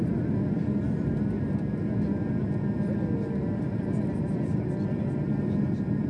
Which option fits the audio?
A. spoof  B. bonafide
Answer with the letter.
B